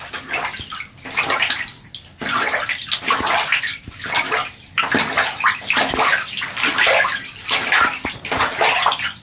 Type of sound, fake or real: real